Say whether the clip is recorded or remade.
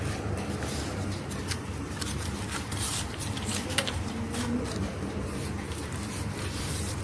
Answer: remade